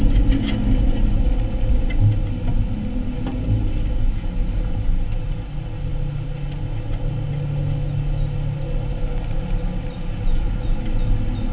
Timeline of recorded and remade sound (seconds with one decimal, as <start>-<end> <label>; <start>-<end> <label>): 0.0-11.5 recorded